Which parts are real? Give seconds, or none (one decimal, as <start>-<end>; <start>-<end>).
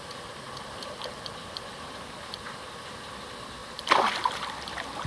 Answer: 0.0-1.4; 3.1-5.1